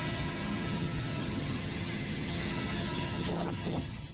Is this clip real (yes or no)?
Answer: no